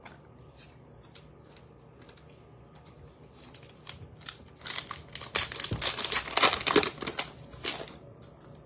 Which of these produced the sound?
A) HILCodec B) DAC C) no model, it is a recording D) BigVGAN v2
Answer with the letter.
C